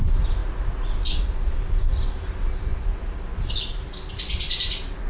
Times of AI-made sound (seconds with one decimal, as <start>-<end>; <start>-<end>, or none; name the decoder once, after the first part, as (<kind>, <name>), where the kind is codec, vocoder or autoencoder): none